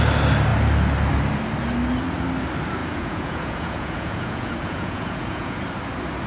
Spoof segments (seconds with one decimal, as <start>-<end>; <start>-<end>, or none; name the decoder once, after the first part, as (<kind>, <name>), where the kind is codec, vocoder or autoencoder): 2.8-5.6 (vocoder, Vocos)